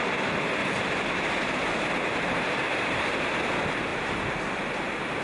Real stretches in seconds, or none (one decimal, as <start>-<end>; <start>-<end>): 0.0-0.6; 3.4-5.2